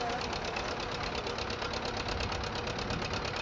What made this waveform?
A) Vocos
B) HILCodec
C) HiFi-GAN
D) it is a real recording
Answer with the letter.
D